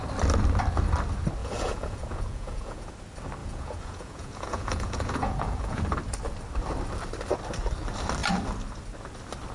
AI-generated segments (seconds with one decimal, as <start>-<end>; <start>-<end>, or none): 1.4-2.9; 3.4-5.8

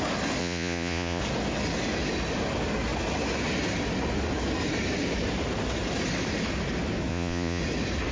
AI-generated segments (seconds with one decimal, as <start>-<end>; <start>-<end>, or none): 0.4-1.2; 7.1-7.6